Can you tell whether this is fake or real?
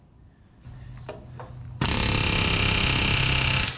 real